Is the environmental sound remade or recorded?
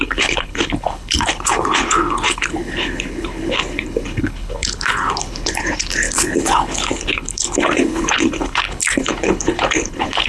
remade